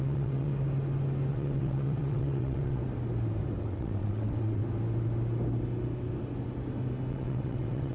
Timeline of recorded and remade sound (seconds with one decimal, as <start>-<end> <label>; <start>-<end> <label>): 0.0-0.5 remade; 0.5-1.3 recorded; 1.3-2.8 remade; 2.8-3.6 recorded; 3.6-4.6 remade; 4.6-7.1 recorded; 7.1-7.9 remade